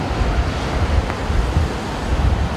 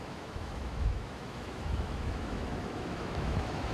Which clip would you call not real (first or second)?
second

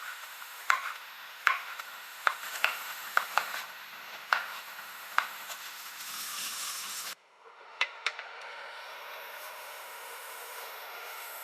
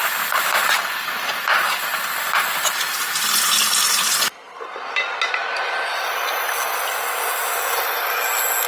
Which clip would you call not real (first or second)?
first